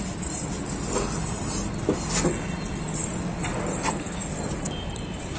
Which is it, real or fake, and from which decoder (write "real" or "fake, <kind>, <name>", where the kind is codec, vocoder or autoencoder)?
real